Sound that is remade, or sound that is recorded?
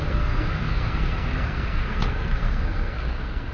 remade